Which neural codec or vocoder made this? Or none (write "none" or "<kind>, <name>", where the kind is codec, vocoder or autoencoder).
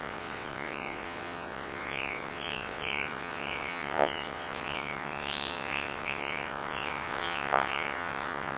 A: vocoder, WaveNeXt